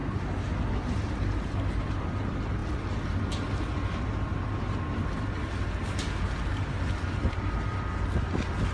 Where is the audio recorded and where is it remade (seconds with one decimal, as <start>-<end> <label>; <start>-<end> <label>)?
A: 0.0-8.7 recorded